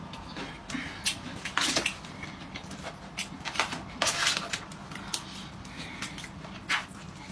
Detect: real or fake real